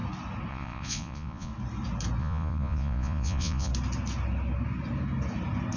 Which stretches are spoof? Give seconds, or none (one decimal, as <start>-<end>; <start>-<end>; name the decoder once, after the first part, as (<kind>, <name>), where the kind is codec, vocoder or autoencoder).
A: 0.5-1.5 (vocoder, Vocos); 2.2-3.7